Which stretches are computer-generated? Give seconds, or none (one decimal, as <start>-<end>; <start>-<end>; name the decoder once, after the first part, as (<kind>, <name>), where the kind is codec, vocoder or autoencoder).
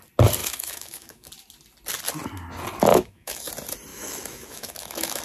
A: 0.4-1.3 (autoencoder, DAC-VAE); 2.9-3.5; 3.9-5.2